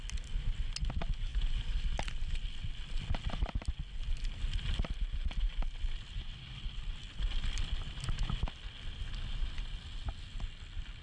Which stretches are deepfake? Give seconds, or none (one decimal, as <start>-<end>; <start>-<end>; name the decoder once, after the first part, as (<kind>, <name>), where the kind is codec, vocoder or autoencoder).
none